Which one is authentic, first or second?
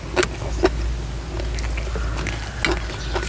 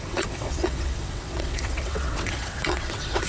first